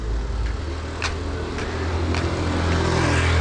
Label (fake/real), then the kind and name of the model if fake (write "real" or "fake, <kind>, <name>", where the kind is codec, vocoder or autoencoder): real